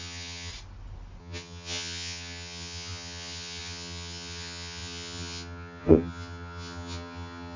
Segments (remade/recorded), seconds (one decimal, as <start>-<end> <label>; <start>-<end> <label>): 0.0-0.5 remade; 0.5-1.2 recorded; 1.2-7.6 remade